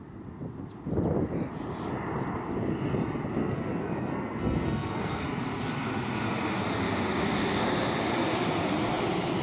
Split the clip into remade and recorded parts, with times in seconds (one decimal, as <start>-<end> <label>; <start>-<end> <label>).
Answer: 0.0-3.4 recorded; 3.4-5.2 remade; 5.2-9.4 recorded